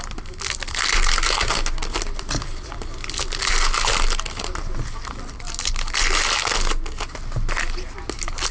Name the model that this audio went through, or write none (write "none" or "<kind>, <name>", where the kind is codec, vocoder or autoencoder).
none